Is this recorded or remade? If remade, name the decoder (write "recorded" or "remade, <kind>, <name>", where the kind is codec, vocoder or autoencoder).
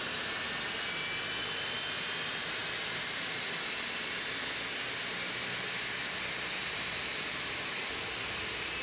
recorded